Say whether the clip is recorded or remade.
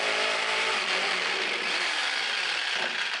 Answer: remade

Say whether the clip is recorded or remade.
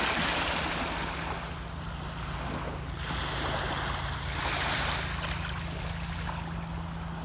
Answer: recorded